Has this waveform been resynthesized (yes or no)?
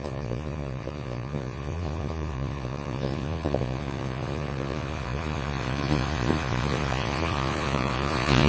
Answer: yes